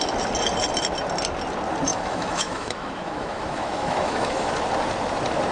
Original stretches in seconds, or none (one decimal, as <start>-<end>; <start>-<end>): 0.0-1.9; 4.5-5.5